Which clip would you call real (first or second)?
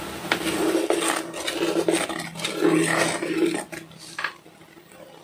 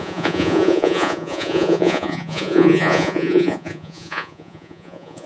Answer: first